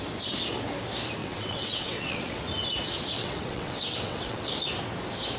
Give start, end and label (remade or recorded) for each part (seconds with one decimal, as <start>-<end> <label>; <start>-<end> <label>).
0.0-1.2 recorded; 1.2-2.4 remade; 2.4-3.2 recorded; 3.2-4.5 remade; 4.5-5.4 recorded